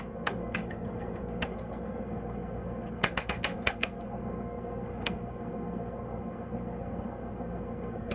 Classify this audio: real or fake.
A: fake